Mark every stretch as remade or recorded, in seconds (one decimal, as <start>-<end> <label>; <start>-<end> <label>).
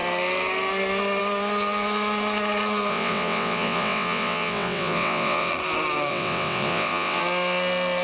0.0-2.9 recorded; 2.9-5.5 remade; 5.5-6.1 recorded; 6.1-7.2 remade; 7.2-8.0 recorded